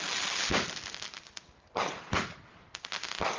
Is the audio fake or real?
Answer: real